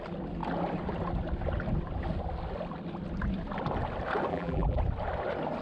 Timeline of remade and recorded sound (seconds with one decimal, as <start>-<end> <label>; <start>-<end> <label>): 0.0-4.3 recorded; 4.3-4.8 remade; 4.8-5.6 recorded

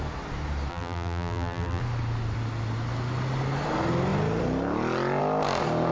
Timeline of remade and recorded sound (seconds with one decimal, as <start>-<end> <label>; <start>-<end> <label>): 0.0-0.7 recorded; 0.7-1.8 remade; 1.8-5.9 recorded